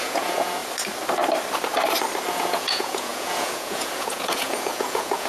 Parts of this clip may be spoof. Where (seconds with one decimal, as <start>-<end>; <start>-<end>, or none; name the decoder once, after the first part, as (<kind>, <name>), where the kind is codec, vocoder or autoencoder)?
0.0-0.6 (vocoder, Vocos); 2.3-5.3